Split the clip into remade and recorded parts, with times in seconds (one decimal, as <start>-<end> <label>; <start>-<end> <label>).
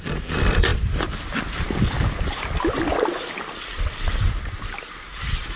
0.0-5.6 recorded